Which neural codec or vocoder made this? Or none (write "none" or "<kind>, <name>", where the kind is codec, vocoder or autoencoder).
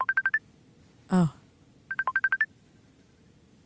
none